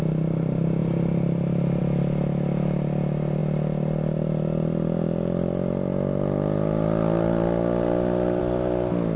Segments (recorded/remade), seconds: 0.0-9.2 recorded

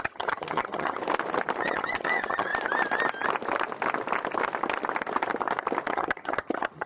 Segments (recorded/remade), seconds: 0.0-1.0 remade; 1.0-1.6 recorded; 1.6-2.5 remade; 2.5-5.9 recorded; 5.9-6.9 remade

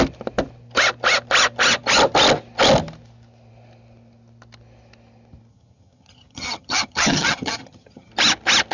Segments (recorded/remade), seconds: 0.0-5.5 recorded; 5.5-8.1 remade; 8.1-8.7 recorded

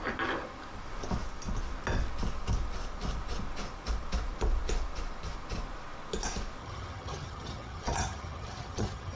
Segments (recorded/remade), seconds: 0.0-6.6 recorded; 6.6-9.2 remade

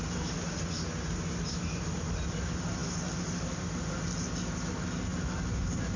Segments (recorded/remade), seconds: 0.0-6.0 recorded